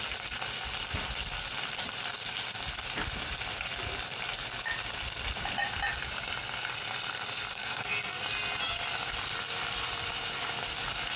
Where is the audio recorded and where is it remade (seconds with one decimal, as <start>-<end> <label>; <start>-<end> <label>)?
0.0-7.5 recorded; 7.5-8.2 remade; 8.2-11.2 recorded